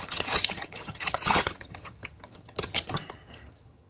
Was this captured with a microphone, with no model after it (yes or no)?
no